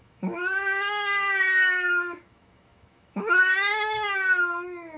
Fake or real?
fake